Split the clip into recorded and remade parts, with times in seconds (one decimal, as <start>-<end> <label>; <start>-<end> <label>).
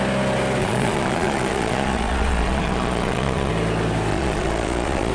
0.0-0.6 recorded; 0.6-3.5 remade; 3.5-4.1 recorded; 4.1-5.1 remade